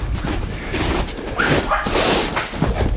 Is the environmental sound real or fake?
real